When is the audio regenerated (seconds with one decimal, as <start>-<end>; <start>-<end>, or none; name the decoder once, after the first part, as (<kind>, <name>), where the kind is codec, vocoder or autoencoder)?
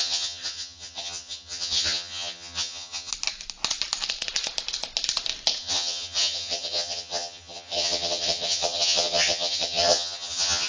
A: 0.0-3.1 (vocoder, HiFi-GAN); 5.6-10.7